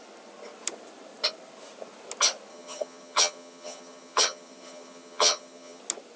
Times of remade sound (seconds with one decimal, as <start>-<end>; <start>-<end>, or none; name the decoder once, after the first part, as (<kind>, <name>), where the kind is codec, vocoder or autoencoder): 2.5-5.8 (vocoder, HiFi-GAN)